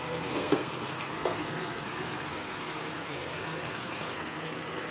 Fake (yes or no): yes